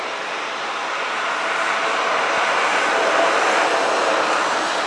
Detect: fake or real real